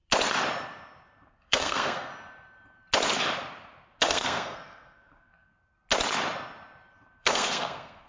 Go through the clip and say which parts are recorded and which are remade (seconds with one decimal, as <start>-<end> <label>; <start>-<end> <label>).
0.0-1.3 recorded; 1.3-2.1 remade; 2.1-4.0 recorded; 4.0-5.5 remade; 5.5-7.2 recorded; 7.2-8.1 remade